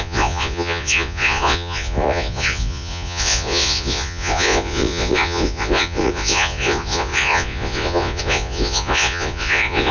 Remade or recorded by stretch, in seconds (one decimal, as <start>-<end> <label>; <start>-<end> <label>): 0.0-9.9 remade